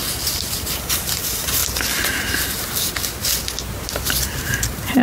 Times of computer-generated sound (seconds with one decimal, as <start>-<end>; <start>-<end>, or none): 1.2-1.6; 3.8-5.0